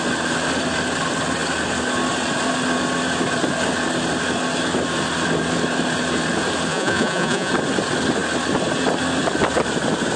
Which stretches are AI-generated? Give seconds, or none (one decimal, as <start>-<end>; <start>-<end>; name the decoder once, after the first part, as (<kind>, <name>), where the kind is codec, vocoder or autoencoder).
6.7-7.5 (vocoder, Vocos)